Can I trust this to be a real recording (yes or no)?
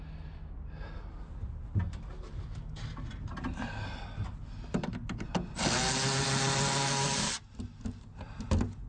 yes